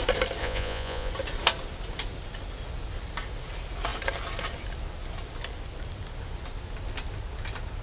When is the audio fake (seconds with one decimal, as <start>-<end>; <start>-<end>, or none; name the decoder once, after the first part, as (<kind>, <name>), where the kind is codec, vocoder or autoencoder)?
0.4-1.1 (vocoder, Vocos)